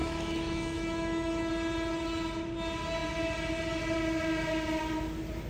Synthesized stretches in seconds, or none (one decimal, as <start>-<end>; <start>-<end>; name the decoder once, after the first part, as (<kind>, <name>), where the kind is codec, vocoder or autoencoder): 0.0-1.5 (autoencoder, DAC-VAE)